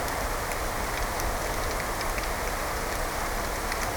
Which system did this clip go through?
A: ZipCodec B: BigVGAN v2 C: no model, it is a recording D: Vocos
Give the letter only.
C